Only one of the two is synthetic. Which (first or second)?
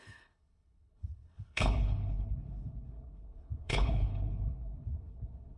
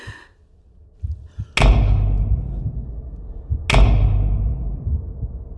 first